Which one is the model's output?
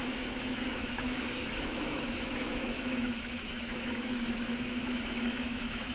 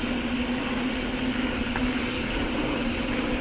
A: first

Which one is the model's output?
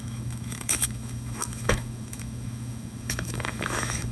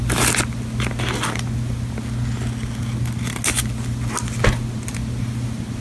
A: first